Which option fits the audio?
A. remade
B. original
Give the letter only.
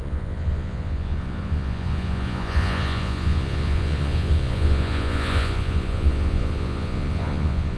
A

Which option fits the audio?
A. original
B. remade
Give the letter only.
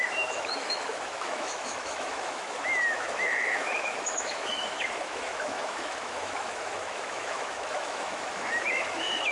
B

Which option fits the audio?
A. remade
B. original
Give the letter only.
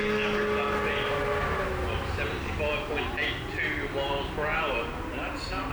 B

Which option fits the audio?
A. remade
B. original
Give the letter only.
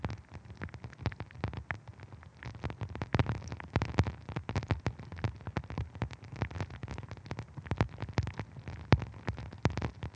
B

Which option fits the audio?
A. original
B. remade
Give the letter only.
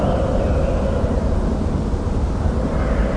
A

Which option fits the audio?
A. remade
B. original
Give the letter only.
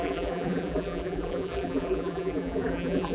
A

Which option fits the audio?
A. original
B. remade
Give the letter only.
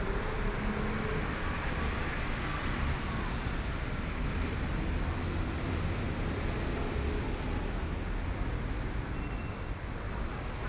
A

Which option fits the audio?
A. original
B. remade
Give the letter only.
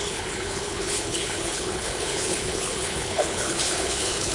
B